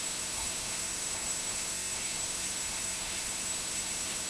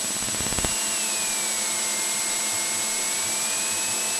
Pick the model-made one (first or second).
first